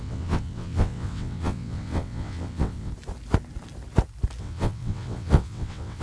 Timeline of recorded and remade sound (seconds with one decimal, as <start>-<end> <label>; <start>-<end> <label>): 0.0-2.9 remade; 2.9-4.4 recorded; 4.4-6.0 remade